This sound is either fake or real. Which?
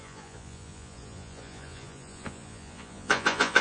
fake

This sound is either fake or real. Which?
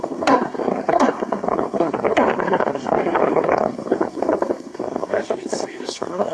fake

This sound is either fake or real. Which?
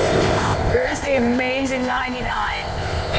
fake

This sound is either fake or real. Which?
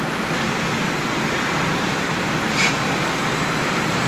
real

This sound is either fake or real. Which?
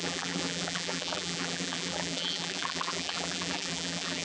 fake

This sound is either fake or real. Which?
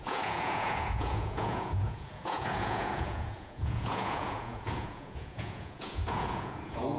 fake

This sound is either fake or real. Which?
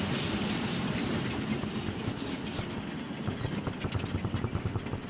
real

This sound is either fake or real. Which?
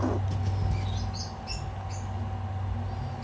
real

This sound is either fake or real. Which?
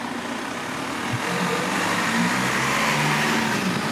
real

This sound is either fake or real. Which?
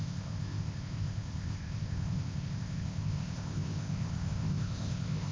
fake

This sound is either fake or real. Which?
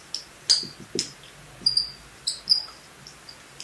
real